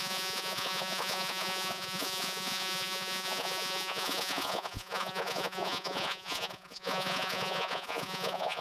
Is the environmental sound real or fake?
fake